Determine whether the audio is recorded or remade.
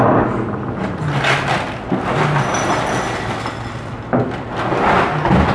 recorded